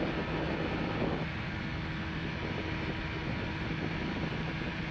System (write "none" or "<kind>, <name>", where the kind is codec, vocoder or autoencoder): none